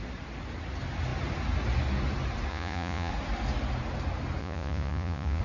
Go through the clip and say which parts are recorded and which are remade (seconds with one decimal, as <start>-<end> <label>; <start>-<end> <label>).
0.0-2.5 recorded; 2.5-3.1 remade; 3.1-4.4 recorded; 4.4-5.4 remade